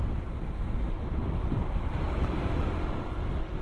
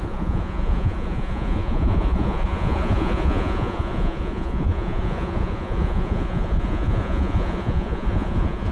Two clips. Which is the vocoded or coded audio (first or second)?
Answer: second